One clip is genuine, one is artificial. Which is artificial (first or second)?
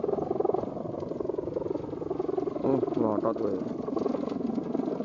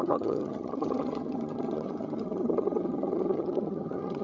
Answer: second